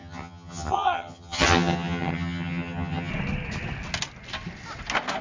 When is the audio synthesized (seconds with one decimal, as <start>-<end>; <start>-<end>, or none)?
0.0-3.1